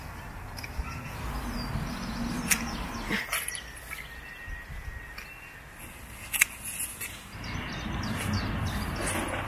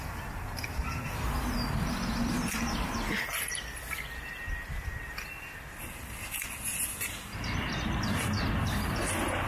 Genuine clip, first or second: first